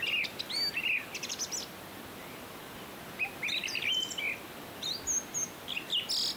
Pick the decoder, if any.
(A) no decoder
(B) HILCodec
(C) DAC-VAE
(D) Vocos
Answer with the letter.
A